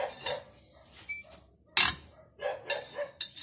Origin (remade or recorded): recorded